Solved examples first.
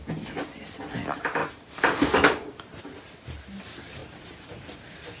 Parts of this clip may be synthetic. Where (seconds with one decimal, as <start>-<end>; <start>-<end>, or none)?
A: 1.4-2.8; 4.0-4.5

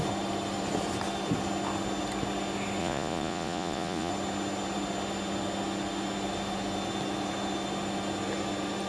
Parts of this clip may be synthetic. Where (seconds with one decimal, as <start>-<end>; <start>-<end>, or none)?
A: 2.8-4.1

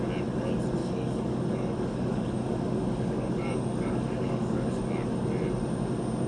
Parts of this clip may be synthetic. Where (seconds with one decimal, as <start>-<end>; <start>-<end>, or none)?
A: 0.8-4.6

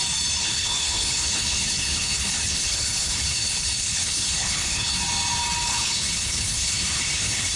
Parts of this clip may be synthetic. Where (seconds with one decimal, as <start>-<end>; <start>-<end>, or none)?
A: 0.4-5.0; 5.7-7.6

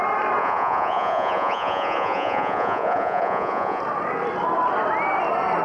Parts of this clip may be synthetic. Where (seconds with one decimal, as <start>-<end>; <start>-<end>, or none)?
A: 0.4-3.8